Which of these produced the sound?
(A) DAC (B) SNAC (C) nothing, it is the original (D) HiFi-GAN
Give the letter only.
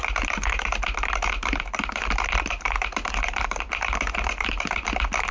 C